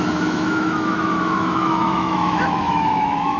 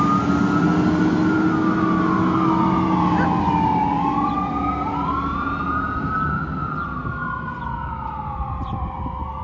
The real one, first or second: second